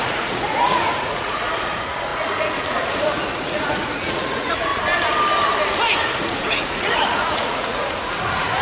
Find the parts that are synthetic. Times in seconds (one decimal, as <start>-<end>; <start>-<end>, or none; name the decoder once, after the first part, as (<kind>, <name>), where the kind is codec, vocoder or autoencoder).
0.0-4.7 (vocoder, Vocos); 6.0-8.6